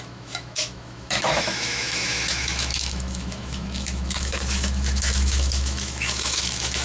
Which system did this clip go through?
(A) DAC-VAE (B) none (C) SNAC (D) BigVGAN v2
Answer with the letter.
A